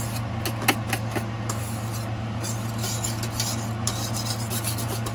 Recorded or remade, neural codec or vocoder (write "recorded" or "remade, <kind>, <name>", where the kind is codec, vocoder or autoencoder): recorded